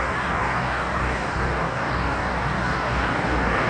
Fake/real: fake